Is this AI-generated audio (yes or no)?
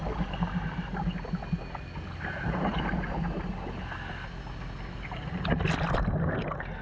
no